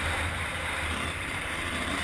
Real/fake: fake